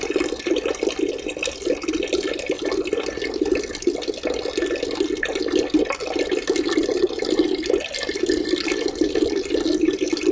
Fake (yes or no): no